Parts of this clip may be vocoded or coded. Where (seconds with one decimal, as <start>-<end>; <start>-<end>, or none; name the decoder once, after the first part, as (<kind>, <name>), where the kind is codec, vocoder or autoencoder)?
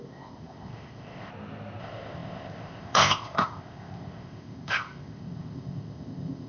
0.0-1.3 (codec, ZipCodec); 1.8-6.5